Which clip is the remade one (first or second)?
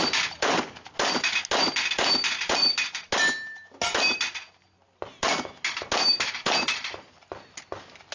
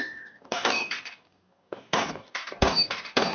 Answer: second